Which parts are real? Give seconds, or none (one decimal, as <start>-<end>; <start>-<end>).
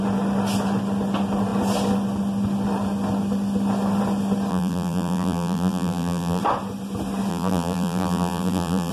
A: 0.0-4.5; 6.4-7.3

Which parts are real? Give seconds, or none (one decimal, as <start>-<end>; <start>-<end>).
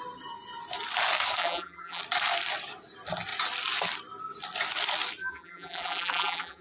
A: 0.0-1.4; 2.0-5.2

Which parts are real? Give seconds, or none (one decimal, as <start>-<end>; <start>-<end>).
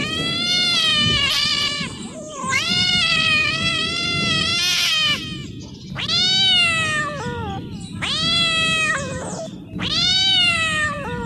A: 4.5-9.0